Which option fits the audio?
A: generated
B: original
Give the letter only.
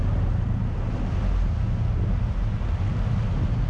B